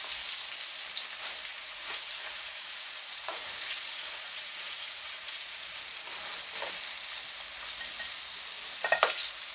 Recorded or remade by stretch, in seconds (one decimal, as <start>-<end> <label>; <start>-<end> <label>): 0.0-1.5 recorded; 1.5-5.7 remade; 5.7-9.5 recorded